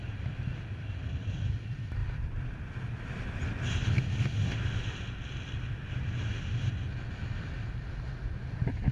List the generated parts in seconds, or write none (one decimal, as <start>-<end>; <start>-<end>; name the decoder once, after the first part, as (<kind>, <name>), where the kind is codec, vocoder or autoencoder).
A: 0.0-1.5 (vocoder, BigVGAN v2); 2.0-3.7

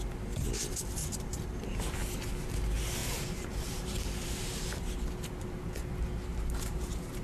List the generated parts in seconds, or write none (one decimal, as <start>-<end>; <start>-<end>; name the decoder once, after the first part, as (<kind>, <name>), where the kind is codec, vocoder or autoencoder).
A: 1.0-1.6 (vocoder, BigVGAN v2); 3.0-4.9; 6.3-7.2

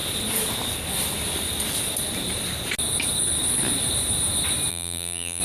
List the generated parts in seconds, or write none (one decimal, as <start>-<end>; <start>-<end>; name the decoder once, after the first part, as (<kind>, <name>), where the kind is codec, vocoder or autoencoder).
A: 4.7-5.4 (vocoder, BigVGAN v2)